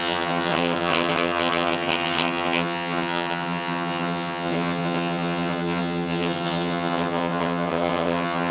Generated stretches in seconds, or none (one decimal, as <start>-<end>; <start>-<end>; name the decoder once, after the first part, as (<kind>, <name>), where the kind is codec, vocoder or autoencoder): 0.0-8.5 (vocoder, HiFi-GAN)